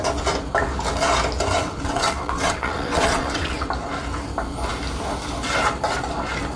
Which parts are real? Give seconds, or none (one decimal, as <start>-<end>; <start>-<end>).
0.0-1.6; 3.7-6.6